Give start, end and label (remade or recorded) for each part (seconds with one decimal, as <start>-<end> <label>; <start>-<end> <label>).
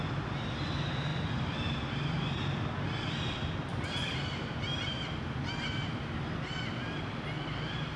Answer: 0.0-3.7 recorded; 3.7-6.0 remade; 6.0-8.0 recorded